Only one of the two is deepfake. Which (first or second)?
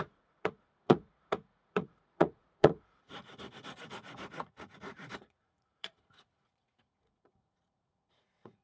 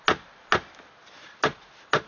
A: first